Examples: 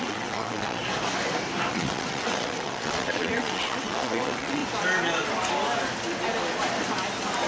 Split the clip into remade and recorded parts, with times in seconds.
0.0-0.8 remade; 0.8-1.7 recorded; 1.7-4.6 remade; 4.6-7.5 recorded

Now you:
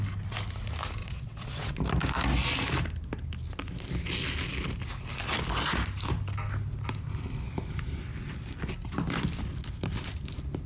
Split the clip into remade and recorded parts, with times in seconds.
0.0-1.0 recorded; 1.0-1.7 remade; 1.7-10.7 recorded